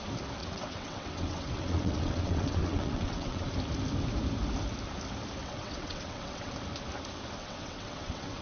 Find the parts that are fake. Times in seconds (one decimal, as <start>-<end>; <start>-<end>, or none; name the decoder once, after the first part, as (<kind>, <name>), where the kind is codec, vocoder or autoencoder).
0.4-3.5 (vocoder, WaveNeXt); 5.4-6.5; 7.4-8.4